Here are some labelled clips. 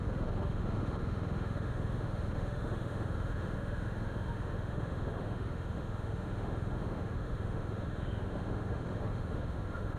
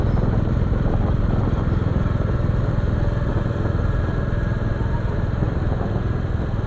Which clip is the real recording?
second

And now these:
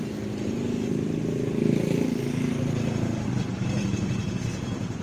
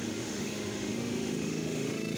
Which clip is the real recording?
first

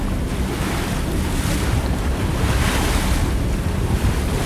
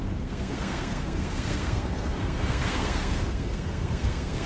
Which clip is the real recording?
first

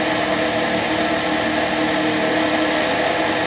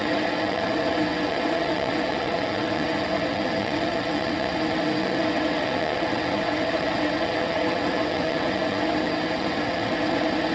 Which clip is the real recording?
first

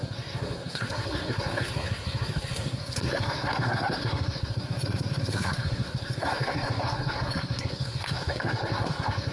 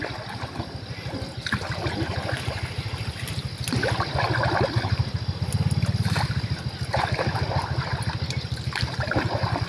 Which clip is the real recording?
second